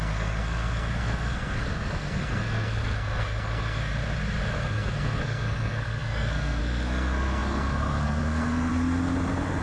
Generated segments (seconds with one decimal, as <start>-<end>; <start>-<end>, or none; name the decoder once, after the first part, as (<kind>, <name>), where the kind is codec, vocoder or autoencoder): 0.0-3.9 (codec, SNAC); 4.5-8.7